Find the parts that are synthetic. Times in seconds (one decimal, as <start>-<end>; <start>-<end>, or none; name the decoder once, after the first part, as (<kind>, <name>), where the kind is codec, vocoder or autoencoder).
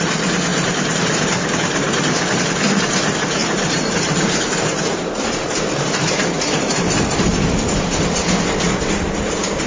0.0-7.3 (vocoder, BigVGAN v2); 8.6-9.7